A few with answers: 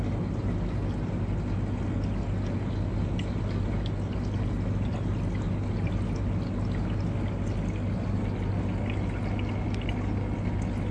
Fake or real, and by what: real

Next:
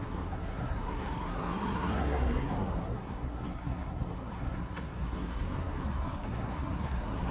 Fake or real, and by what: fake, codec, SNAC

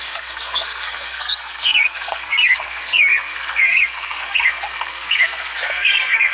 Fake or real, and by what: fake, codec, SNAC